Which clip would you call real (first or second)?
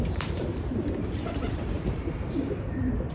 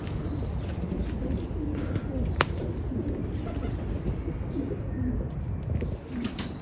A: second